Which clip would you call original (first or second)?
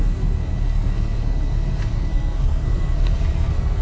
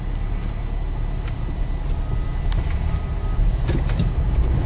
second